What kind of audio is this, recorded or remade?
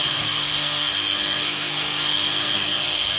remade